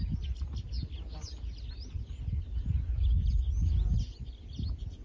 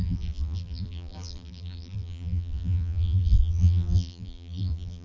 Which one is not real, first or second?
second